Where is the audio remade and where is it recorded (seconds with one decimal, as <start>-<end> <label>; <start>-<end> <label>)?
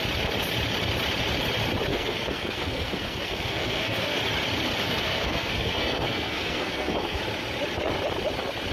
0.0-1.9 recorded; 1.9-4.2 remade; 4.2-4.8 recorded; 4.8-7.2 remade; 7.2-8.7 recorded